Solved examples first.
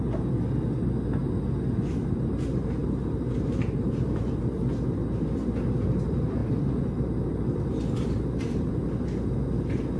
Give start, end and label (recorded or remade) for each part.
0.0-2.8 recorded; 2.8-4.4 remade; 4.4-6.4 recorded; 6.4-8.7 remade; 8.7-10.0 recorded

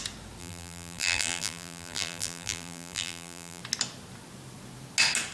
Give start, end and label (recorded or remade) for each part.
0.0-0.4 recorded; 0.4-3.6 remade; 3.6-5.3 recorded

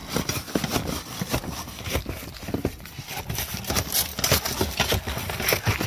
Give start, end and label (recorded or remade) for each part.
0.0-5.9 recorded

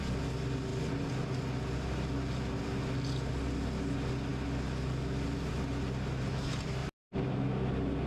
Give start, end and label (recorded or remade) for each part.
0.0-6.8 recorded; 6.8-7.4 remade; 7.4-8.1 recorded

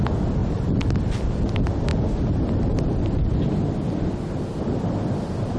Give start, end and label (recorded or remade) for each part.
0.0-0.4 recorded; 0.4-1.4 remade; 1.4-5.6 recorded

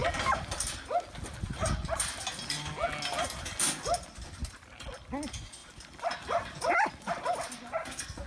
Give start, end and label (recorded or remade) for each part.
0.0-8.3 recorded

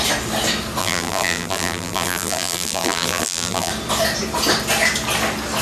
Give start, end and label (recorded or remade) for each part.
0.0-0.8 recorded; 0.8-3.7 remade; 3.7-5.6 recorded

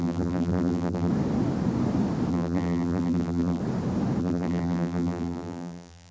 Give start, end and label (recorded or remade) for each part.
0.0-1.1 remade; 1.1-2.3 recorded; 2.3-3.6 remade; 3.6-4.2 recorded; 4.2-6.1 remade